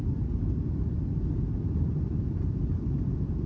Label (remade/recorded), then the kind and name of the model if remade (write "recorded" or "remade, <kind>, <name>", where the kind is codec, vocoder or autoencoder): remade, vocoder, BigVGAN v2